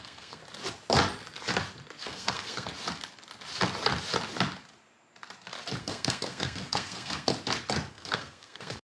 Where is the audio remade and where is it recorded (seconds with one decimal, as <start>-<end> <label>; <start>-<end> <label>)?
0.0-0.4 remade; 0.4-2.0 recorded; 2.0-2.7 remade; 2.7-5.8 recorded; 5.8-7.3 remade; 7.3-7.9 recorded; 7.9-8.8 remade